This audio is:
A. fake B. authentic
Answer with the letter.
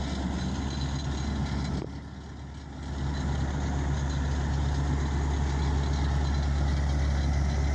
B